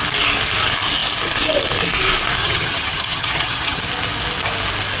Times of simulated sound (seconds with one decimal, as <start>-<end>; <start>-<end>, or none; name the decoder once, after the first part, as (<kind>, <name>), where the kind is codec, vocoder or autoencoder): 2.4-3.8 (vocoder, HiFi-GAN)